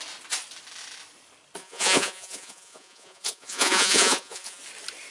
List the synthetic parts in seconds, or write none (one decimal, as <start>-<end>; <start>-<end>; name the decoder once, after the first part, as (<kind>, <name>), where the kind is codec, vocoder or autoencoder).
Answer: 1.6-4.6 (vocoder, Vocos)